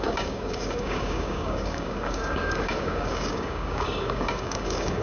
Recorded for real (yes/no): no